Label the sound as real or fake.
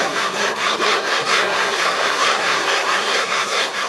fake